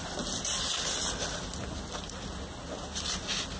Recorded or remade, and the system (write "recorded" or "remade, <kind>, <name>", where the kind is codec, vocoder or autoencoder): recorded